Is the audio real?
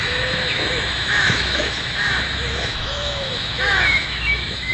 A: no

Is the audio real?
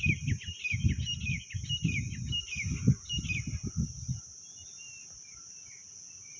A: yes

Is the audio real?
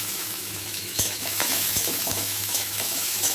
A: no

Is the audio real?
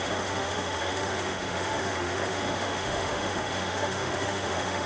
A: no